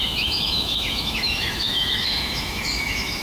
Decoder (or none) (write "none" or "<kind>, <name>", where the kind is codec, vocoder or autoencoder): autoencoder, DAC-VAE